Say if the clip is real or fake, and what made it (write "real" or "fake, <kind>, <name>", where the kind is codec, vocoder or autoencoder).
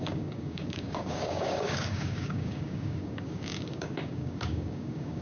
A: fake, codec, DAC